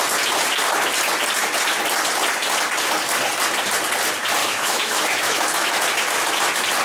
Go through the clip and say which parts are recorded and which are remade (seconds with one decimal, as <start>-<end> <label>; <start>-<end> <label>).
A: 0.0-4.4 recorded; 4.4-5.8 remade; 5.8-6.8 recorded

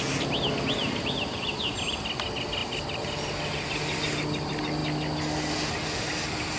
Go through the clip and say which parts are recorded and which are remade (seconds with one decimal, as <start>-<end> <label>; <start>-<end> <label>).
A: 0.0-0.8 recorded; 0.8-1.6 remade; 1.6-6.6 recorded

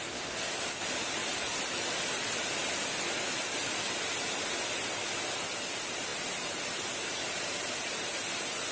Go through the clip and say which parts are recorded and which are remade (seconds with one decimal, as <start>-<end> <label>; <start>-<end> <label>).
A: 0.0-8.7 recorded

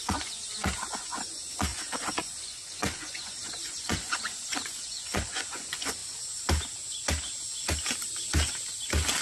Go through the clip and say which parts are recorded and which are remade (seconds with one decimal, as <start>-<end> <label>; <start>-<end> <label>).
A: 0.0-6.0 remade; 6.0-9.2 recorded

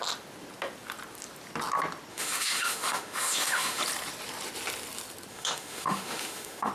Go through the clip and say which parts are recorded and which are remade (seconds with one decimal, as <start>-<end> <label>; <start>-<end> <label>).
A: 0.0-2.1 recorded; 2.1-3.8 remade; 3.8-5.3 recorded; 5.3-6.7 remade

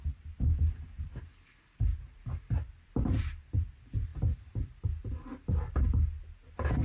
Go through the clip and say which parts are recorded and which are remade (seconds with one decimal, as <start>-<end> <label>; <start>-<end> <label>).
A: 0.0-6.8 recorded

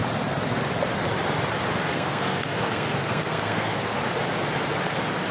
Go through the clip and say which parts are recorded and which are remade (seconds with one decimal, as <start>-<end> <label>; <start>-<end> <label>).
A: 0.0-1.9 recorded; 1.9-4.0 remade; 4.0-5.3 recorded

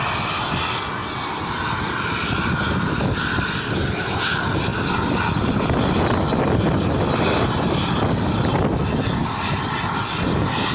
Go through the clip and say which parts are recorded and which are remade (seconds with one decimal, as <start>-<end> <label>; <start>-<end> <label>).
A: 0.0-10.7 recorded